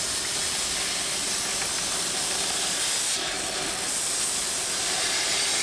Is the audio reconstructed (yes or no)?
no